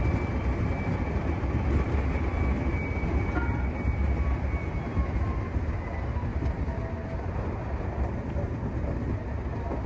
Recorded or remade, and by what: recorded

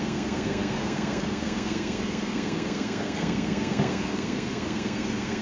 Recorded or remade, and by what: remade, codec, SNAC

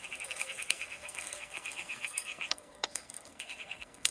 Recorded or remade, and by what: remade, codec, SNAC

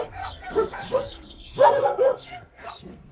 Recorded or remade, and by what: remade, codec, SNAC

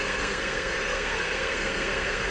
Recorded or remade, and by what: remade, codec, SNAC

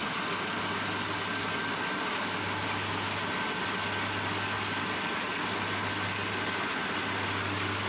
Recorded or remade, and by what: recorded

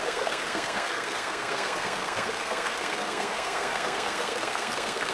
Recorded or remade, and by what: remade, codec, SNAC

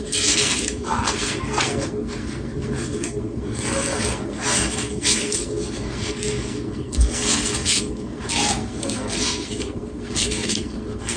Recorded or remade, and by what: remade, codec, SNAC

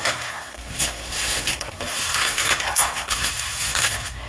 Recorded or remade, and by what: remade, codec, SNAC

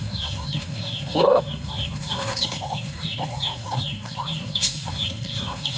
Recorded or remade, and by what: remade, codec, SNAC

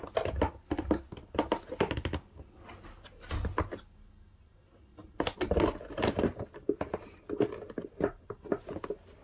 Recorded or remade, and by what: recorded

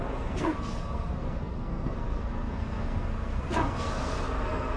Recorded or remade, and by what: remade, codec, SNAC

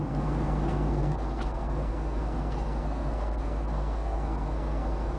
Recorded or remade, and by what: remade, codec, SNAC